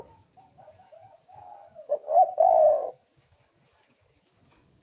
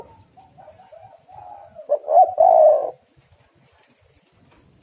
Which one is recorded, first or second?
second